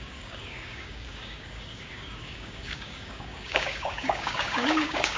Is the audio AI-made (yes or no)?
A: yes